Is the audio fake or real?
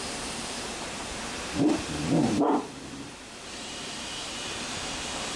fake